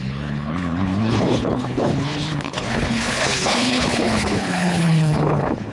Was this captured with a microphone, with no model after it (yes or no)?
no